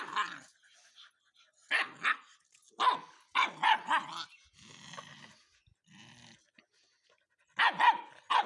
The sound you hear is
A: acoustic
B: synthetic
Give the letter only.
A